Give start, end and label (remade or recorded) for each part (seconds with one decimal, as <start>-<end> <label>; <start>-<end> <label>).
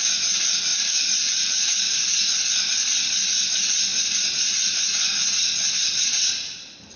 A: 0.0-0.7 recorded; 0.7-2.2 remade; 2.2-7.0 recorded